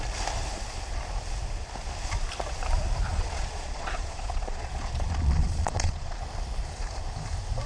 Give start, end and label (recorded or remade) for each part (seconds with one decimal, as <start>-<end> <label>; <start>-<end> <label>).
0.0-3.1 recorded; 3.1-6.2 remade; 6.2-7.7 recorded